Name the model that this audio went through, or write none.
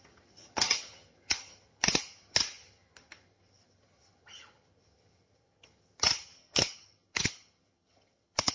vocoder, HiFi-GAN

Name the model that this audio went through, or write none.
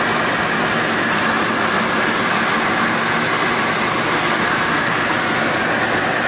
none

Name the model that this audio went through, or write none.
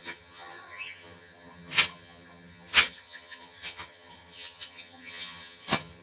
vocoder, HiFi-GAN